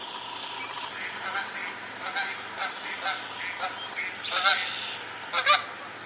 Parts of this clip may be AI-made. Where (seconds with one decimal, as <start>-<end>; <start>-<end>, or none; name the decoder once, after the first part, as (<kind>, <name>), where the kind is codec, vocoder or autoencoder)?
none